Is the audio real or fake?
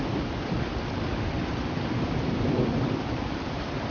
fake